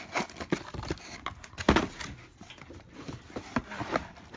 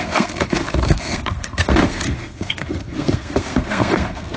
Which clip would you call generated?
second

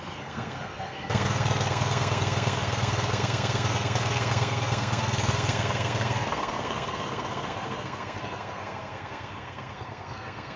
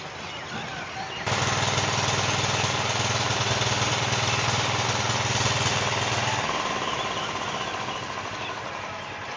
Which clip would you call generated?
first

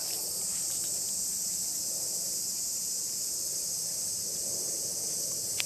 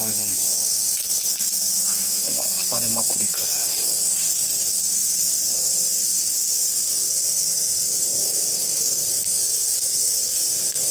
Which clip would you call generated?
second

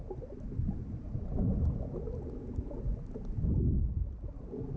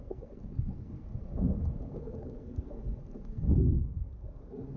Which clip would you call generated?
second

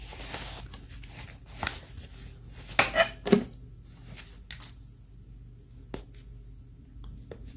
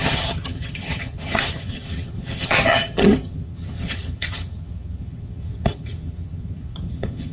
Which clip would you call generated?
second